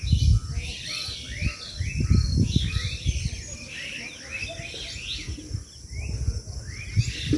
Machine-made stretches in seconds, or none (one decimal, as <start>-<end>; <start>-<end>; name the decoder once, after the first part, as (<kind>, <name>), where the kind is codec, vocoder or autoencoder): none